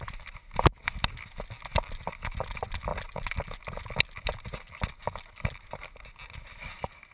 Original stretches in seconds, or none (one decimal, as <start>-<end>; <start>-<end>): 0.0-7.1